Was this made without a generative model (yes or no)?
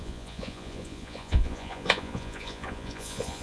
no